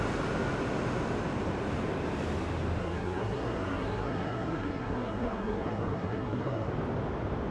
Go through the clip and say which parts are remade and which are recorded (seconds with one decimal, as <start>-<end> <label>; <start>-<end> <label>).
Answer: 0.0-2.8 recorded; 2.8-6.7 remade; 6.7-7.5 recorded